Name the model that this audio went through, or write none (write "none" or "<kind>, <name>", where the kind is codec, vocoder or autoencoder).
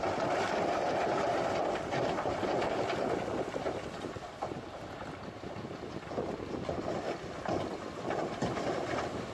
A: none